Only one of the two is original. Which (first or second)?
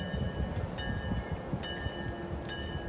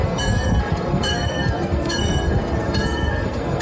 first